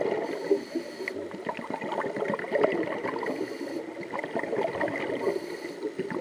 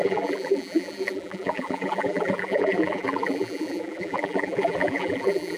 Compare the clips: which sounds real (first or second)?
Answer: first